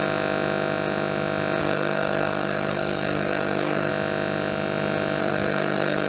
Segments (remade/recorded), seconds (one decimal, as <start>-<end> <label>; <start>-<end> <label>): 0.0-1.6 recorded; 1.6-3.9 remade; 3.9-5.2 recorded; 5.2-6.1 remade